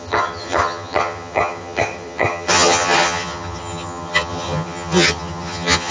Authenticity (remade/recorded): remade